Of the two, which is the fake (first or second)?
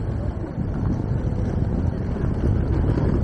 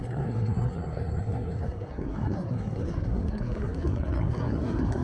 second